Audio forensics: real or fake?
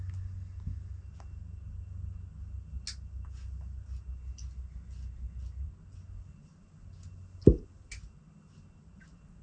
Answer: real